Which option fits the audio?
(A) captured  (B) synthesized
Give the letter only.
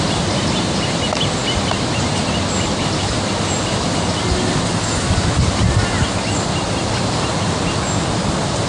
A